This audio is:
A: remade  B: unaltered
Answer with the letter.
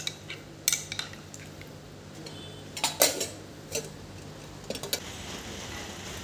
B